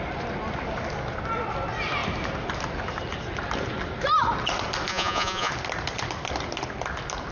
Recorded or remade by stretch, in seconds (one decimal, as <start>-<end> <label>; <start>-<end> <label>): 0.0-4.9 recorded; 4.9-5.5 remade; 5.5-7.3 recorded